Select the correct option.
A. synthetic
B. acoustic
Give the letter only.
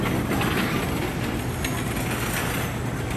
B